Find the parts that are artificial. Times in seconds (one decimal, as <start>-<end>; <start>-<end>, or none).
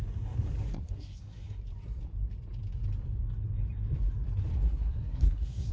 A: 0.7-1.6; 4.5-5.7